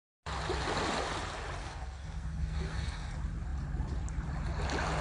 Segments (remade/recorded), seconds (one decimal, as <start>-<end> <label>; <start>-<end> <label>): 0.0-1.6 recorded; 1.6-3.1 remade; 3.1-5.0 recorded